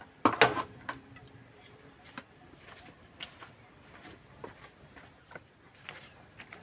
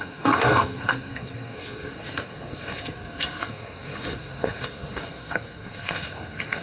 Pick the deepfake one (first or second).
second